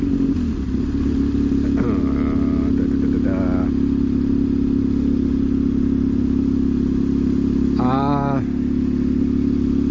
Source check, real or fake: real